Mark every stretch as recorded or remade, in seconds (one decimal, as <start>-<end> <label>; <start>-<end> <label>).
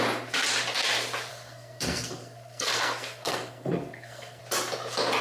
0.0-1.3 recorded; 1.3-4.4 remade; 4.4-5.2 recorded